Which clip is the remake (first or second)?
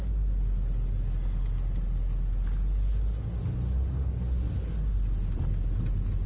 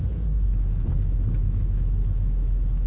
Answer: second